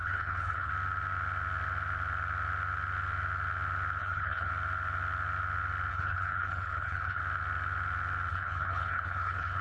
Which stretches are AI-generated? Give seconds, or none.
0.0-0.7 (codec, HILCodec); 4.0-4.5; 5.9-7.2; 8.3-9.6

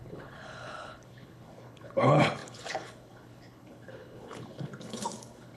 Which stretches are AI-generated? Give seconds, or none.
0.0-5.6 (codec, HILCodec)

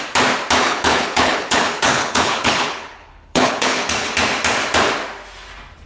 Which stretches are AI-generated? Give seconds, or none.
0.6-4.1 (codec, HILCodec)

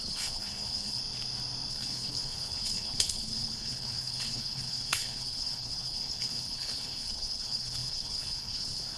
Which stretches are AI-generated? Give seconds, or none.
0.0-1.0 (codec, HILCodec); 1.7-9.0

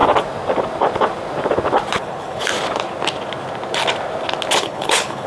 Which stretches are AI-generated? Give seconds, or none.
2.0-2.5 (codec, HILCodec); 4.6-5.3

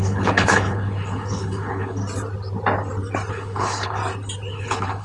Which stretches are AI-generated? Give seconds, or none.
0.0-2.0 (codec, HILCodec); 3.3-4.0; 4.5-5.0

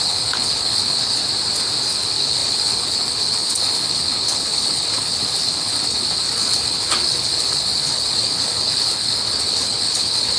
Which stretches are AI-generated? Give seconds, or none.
0.0-1.2 (codec, HILCodec); 1.9-10.4

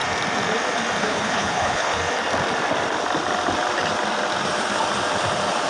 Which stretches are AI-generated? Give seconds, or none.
1.0-2.0 (codec, HILCodec)